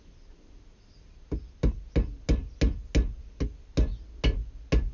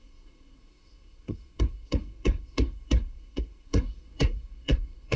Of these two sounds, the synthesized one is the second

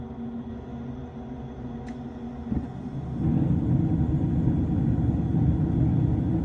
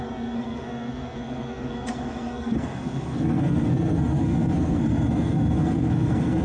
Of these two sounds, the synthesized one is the second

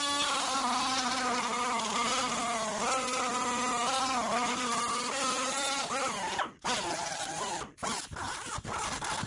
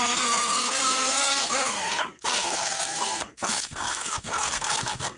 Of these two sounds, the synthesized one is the second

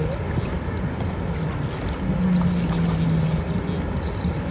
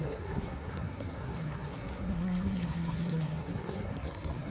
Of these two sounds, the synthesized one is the second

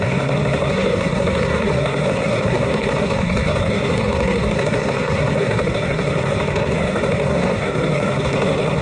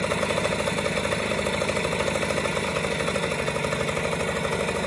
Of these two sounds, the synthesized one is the first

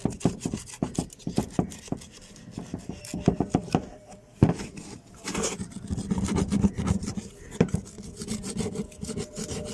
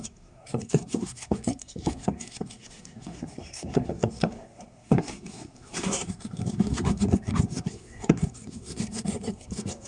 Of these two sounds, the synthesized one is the second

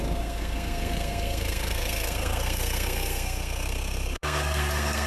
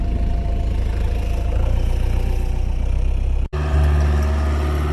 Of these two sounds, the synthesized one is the first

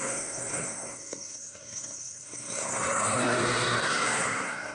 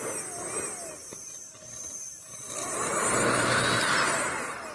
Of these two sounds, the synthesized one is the first